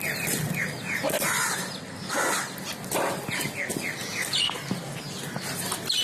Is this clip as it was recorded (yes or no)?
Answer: yes